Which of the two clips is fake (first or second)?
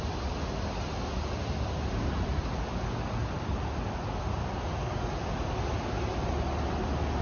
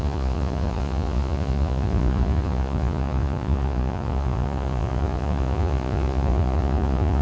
second